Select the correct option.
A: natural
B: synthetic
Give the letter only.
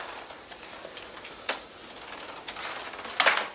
A